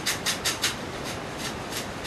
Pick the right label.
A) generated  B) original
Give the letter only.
B